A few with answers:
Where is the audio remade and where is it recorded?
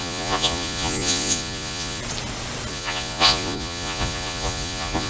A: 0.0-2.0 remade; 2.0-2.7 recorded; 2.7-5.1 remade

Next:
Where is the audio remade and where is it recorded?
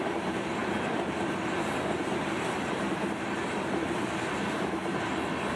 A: 0.0-5.6 recorded